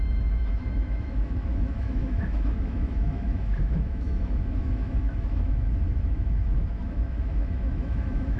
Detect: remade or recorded remade